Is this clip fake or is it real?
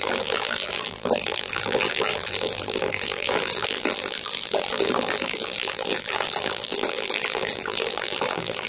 fake